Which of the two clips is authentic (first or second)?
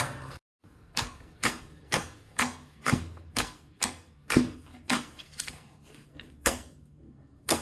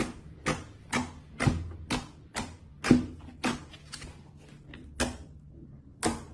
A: second